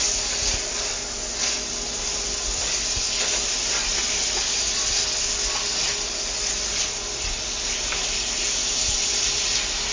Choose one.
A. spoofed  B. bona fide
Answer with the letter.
B